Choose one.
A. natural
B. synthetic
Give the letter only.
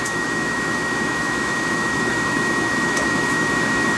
B